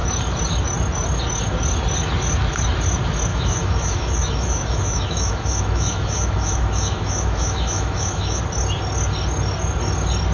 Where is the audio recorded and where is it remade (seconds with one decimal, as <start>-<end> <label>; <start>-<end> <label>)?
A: 0.0-3.3 recorded; 3.3-8.4 remade; 8.4-10.3 recorded